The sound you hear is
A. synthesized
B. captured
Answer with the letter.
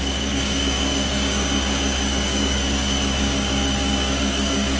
A